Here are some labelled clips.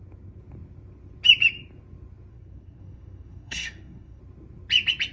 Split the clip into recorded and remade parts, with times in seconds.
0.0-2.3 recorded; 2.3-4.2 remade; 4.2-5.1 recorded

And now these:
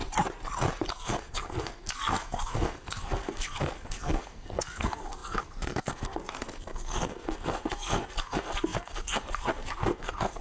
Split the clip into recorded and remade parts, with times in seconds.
0.0-0.9 recorded; 0.9-10.4 remade